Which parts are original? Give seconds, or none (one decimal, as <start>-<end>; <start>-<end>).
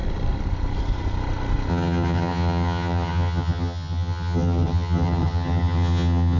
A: 0.0-1.7